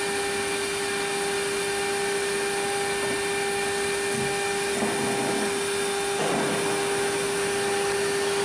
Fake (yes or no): no